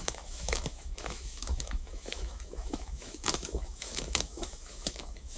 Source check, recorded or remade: remade